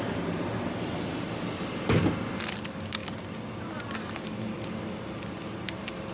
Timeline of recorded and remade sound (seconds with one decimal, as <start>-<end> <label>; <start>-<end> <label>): 0.0-6.1 recorded